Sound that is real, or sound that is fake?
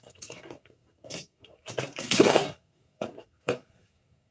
fake